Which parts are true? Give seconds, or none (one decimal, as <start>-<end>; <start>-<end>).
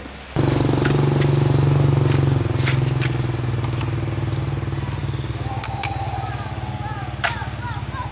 0.0-8.1